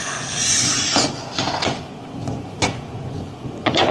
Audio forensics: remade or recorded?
remade